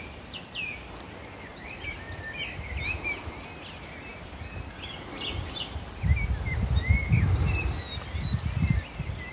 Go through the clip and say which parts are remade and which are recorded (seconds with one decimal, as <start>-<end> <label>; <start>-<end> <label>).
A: 0.0-9.3 recorded